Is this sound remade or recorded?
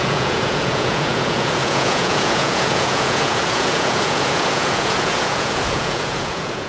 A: remade